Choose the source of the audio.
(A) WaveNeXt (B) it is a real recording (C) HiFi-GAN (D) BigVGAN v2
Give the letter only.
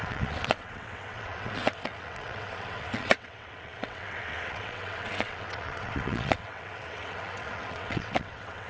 A